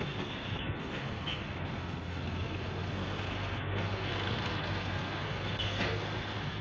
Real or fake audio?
fake